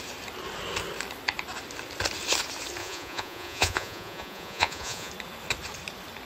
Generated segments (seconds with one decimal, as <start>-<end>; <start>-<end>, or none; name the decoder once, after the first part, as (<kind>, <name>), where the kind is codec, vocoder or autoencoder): 2.8-5.1 (vocoder, Vocos)